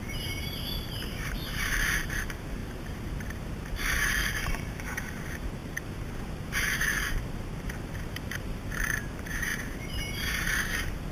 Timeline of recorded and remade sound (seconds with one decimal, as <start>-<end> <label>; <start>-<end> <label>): 0.0-11.1 remade